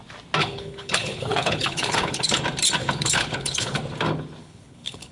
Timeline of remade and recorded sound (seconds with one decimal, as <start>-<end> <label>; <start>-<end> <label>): 0.0-0.4 recorded; 0.4-2.4 remade; 2.4-2.8 recorded; 2.8-3.8 remade; 3.8-4.4 recorded; 4.4-5.1 remade